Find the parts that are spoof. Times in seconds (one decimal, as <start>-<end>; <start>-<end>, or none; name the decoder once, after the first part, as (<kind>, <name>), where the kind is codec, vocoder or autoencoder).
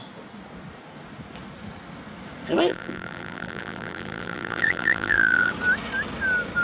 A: 2.7-5.5 (vocoder, BigVGAN v2)